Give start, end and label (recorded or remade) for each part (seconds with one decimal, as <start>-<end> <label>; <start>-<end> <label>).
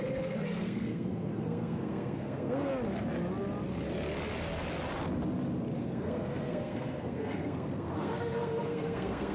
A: 0.0-2.7 remade; 2.7-5.8 recorded; 5.8-9.3 remade